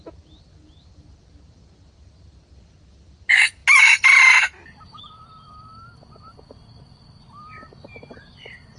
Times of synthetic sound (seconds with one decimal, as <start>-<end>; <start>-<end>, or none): none